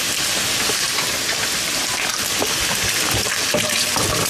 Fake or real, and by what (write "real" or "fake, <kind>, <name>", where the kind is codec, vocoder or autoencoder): fake, vocoder, BigVGAN v2